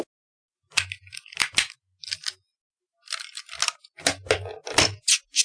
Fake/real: real